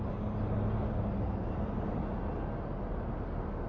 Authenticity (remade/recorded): recorded